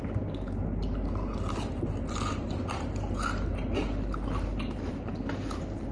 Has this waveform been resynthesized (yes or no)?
no